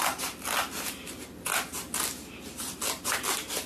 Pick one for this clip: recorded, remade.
recorded